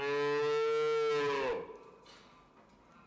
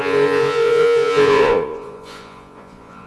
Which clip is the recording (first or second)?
first